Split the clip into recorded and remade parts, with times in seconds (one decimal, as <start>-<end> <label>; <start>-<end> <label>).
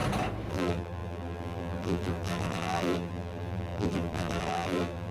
0.0-0.5 recorded; 0.5-5.1 remade